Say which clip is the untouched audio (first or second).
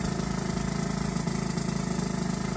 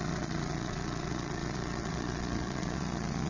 first